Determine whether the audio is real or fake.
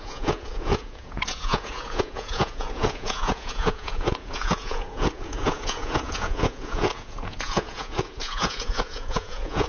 fake